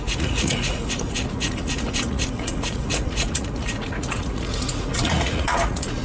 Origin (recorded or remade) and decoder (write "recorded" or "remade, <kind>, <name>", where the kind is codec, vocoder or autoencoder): remade, vocoder, Vocos